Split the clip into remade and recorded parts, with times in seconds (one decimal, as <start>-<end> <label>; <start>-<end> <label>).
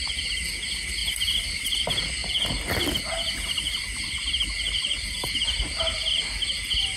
0.0-1.0 recorded; 1.0-1.8 remade; 1.8-7.0 recorded